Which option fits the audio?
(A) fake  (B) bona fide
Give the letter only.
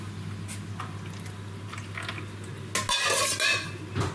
B